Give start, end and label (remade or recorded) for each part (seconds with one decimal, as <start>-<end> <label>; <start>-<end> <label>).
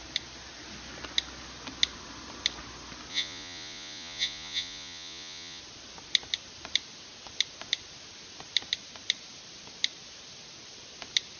0.0-3.1 recorded; 3.1-5.6 remade; 5.6-11.4 recorded